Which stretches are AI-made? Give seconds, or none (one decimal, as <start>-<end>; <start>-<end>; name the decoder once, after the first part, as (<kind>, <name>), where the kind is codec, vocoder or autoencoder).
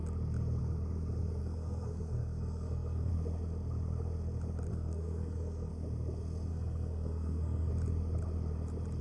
1.4-3.1 (codec, SNAC); 4.7-5.7; 6.5-7.7